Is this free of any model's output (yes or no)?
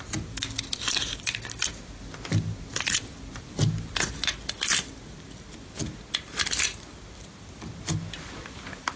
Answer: yes